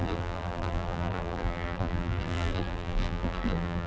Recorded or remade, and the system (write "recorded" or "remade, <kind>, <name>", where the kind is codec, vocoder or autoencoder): remade, vocoder, BigVGAN v2